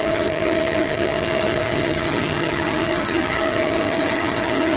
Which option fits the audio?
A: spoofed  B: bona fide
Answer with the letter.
A